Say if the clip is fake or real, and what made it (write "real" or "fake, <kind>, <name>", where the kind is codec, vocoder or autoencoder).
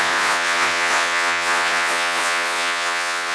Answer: fake, vocoder, Vocos